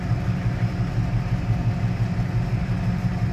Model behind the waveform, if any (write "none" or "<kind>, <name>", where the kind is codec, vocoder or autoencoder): none